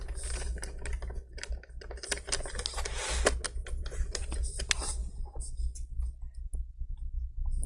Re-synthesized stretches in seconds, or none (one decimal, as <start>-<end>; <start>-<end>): 3.8-4.6